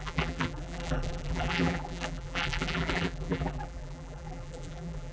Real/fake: fake